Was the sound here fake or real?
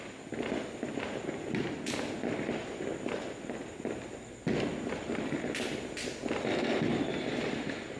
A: real